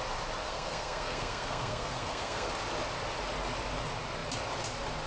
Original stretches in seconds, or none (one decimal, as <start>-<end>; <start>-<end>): 0.0-0.4; 2.5-5.1